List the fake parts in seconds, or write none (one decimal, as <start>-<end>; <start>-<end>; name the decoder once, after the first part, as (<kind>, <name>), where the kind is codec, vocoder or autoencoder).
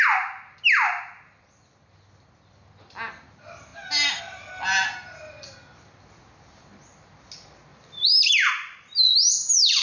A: 3.7-4.2 (vocoder, BigVGAN v2); 7.7-8.5